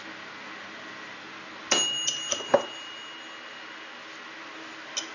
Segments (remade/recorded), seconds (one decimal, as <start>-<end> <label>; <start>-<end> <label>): 0.0-5.1 recorded